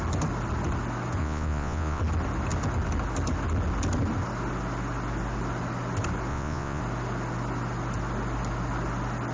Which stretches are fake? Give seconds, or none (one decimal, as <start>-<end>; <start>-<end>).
1.2-2.0; 6.3-6.8